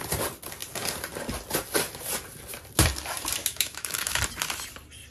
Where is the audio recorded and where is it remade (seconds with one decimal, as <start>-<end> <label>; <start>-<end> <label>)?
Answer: 0.0-3.4 recorded; 3.4-4.2 remade; 4.2-5.1 recorded